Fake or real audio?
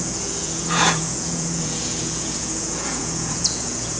fake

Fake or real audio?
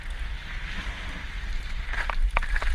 real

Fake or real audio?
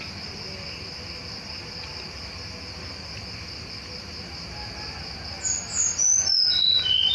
real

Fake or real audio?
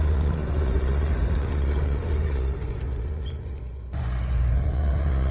fake